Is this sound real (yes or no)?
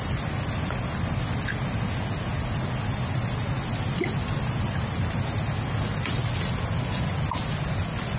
yes